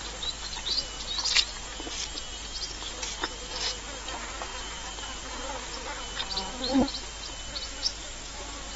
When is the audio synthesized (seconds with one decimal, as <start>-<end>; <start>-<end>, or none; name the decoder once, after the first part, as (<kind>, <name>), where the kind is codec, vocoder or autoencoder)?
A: none